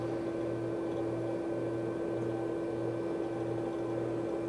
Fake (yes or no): no